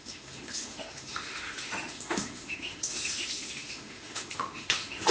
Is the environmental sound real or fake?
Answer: fake